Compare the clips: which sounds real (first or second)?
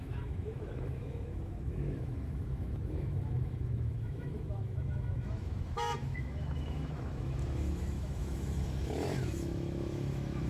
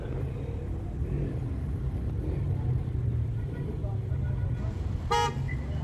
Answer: second